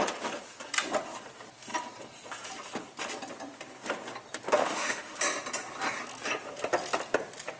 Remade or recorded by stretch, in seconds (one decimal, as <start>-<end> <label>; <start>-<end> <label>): 0.0-4.6 recorded; 4.6-5.2 remade; 5.2-7.6 recorded